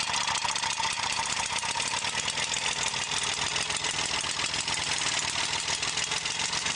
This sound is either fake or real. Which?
real